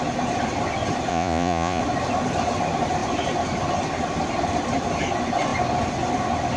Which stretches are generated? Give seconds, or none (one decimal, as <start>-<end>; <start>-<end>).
1.1-1.8